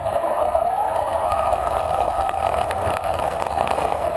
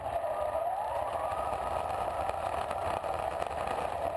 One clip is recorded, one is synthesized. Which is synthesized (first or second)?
first